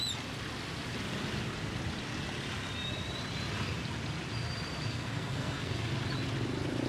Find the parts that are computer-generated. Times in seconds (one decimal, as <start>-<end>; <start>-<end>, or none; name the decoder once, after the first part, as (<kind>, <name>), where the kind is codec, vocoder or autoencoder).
4.9-5.9 (codec, SNAC)